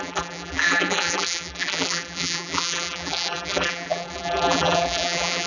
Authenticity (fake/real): fake